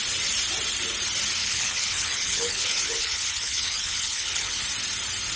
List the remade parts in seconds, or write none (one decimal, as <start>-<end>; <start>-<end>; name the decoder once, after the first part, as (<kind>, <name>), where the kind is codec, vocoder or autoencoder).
1.4-4.6 (codec, HILCodec)